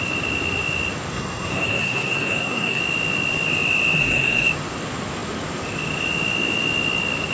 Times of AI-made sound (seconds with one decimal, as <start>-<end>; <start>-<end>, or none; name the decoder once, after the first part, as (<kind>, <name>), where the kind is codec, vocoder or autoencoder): 1.1-2.8 (codec, SNAC); 4.0-4.5